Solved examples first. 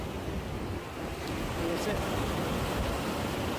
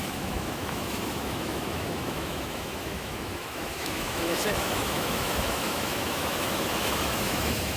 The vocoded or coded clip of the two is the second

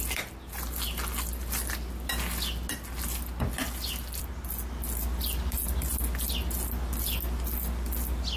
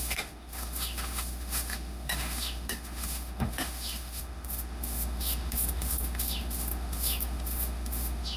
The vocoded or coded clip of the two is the second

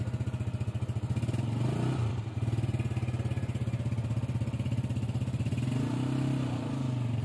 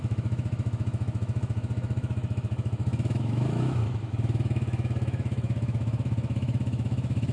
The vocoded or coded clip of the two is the second